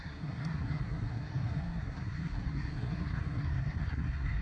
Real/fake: fake